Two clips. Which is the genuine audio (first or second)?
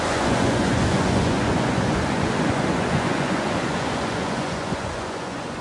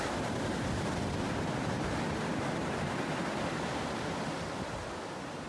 second